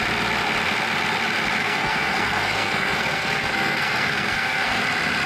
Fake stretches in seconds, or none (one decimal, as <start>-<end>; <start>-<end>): 1.6-4.8